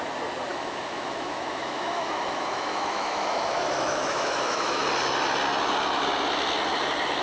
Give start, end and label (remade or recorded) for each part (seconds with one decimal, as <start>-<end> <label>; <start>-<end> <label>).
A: 0.0-0.5 recorded; 0.5-4.8 remade; 4.8-7.2 recorded

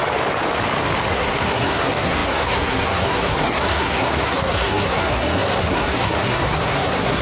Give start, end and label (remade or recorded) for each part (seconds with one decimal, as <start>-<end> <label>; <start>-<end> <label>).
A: 0.0-1.1 recorded; 1.1-7.2 remade

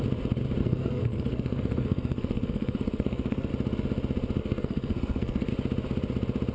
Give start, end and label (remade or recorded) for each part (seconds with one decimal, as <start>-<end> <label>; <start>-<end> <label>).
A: 0.0-0.6 recorded; 0.6-3.5 remade; 3.5-4.4 recorded; 4.4-5.5 remade; 5.5-6.5 recorded

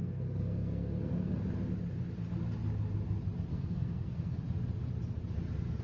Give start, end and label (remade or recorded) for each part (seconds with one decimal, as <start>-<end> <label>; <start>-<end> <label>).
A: 0.0-1.4 remade; 1.4-3.5 recorded; 3.5-4.4 remade; 4.4-5.8 recorded

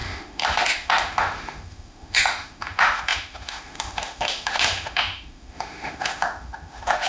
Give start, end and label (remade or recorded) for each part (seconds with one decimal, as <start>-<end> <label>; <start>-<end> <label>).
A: 0.0-7.1 remade

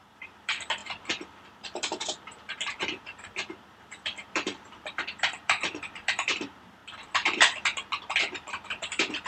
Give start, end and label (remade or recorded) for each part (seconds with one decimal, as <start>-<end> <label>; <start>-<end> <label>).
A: 0.0-6.8 remade; 6.8-8.2 recorded; 8.2-9.3 remade

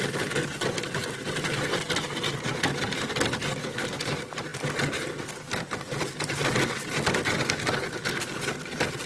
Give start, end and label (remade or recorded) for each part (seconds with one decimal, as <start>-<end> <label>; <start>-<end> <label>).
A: 0.0-9.1 recorded